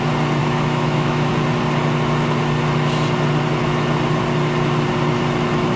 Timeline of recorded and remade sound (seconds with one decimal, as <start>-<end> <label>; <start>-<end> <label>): 0.0-0.4 recorded; 0.4-1.3 remade; 1.3-5.8 recorded